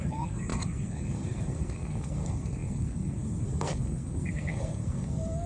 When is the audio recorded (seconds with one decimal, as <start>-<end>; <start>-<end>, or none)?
none